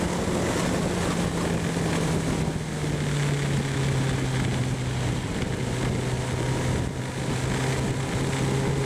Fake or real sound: real